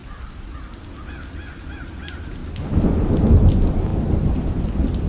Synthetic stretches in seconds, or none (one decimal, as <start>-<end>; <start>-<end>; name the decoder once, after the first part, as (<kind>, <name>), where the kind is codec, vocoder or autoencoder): none